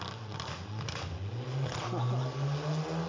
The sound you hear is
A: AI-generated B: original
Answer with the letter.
B